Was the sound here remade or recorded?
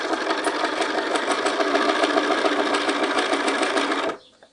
recorded